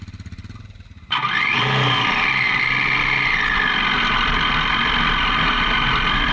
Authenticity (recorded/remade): recorded